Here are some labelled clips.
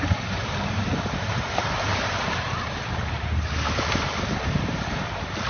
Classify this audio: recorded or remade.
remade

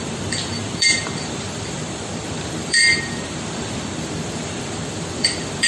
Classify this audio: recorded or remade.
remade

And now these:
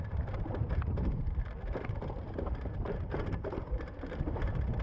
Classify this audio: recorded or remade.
remade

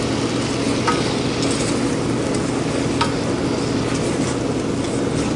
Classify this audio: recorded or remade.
recorded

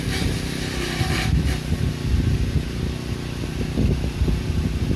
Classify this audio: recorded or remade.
recorded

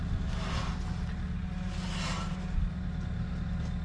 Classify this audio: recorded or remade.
recorded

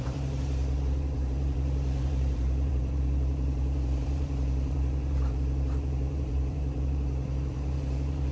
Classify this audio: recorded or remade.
remade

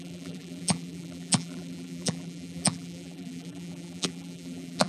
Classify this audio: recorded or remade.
remade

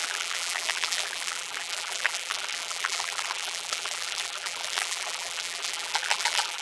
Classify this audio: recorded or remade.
remade